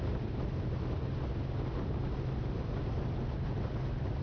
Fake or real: real